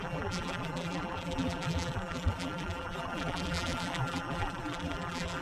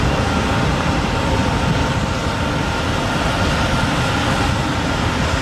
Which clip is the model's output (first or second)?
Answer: first